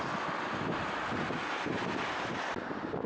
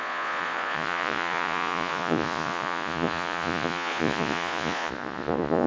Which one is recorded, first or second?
first